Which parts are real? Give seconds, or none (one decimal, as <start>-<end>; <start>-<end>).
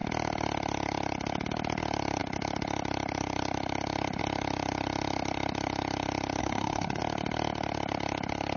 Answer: 0.0-6.4; 7.0-8.6